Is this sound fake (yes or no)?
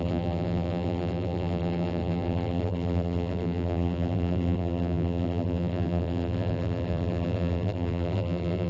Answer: yes